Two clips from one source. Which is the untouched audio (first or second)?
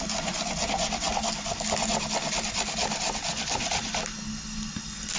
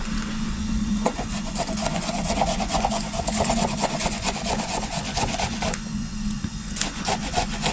first